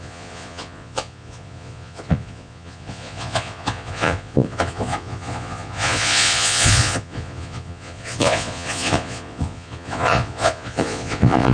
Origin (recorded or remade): remade